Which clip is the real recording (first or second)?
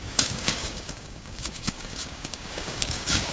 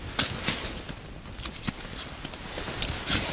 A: second